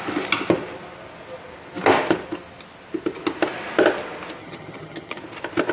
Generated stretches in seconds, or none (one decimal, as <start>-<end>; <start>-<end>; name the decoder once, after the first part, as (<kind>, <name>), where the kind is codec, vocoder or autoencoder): 4.4-5.2 (vocoder, HiFi-GAN)